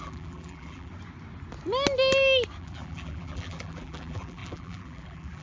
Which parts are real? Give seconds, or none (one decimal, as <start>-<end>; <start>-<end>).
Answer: 0.9-2.6